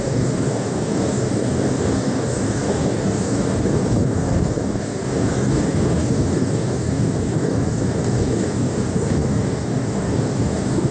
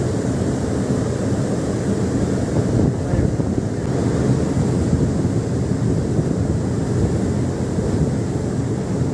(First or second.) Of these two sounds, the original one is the second